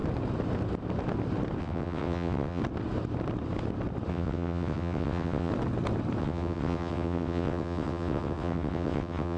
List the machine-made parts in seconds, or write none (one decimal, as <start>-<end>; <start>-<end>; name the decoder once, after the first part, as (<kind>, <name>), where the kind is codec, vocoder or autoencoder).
1.6-2.6 (vocoder, WaveNeXt); 4.1-5.5; 6.2-9.4